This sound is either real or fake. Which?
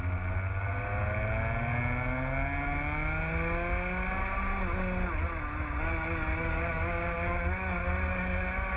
real